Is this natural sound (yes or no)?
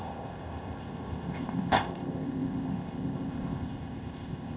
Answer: no